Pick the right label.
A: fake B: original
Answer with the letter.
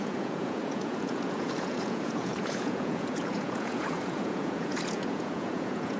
A